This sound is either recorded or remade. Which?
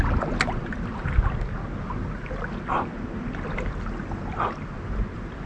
recorded